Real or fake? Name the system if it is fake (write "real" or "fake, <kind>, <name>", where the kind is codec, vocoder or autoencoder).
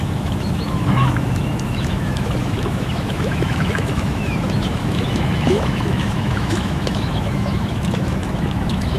fake, autoencoder, DAC-VAE